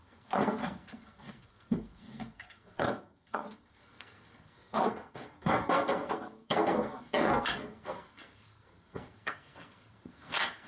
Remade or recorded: remade